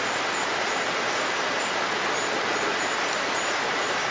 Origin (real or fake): real